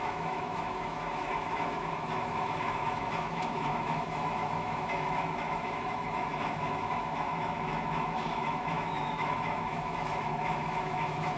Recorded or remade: remade